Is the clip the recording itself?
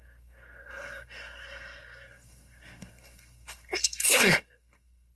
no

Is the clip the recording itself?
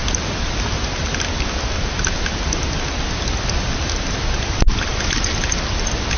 yes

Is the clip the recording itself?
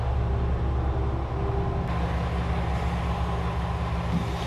yes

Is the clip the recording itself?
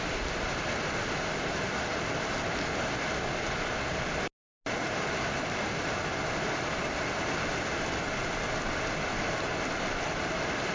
yes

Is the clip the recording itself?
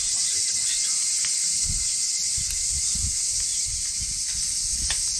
yes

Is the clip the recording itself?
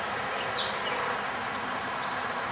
yes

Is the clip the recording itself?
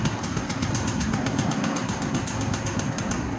no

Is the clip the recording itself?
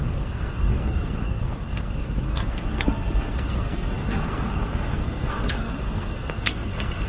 no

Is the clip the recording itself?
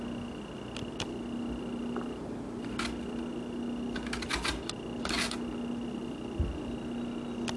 yes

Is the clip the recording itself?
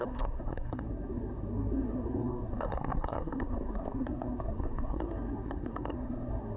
no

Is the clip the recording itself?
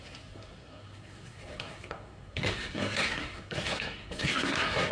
no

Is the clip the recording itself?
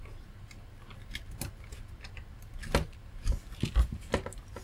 yes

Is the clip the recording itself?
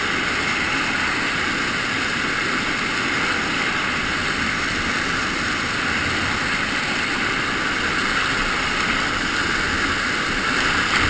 yes